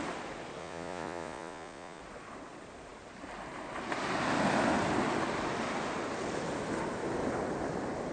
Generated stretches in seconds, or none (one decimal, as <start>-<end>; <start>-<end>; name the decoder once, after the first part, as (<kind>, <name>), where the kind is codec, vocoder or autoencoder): 0.6-2.0 (vocoder, Vocos)